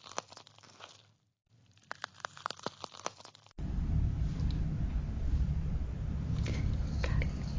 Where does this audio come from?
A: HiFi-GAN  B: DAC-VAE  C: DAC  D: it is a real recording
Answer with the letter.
D